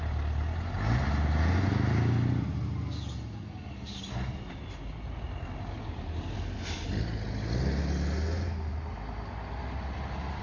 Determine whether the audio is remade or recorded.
recorded